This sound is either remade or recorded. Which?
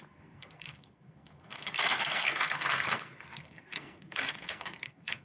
remade